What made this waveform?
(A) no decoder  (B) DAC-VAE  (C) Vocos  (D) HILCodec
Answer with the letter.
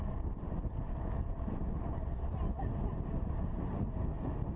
A